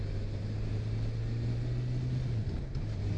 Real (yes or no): yes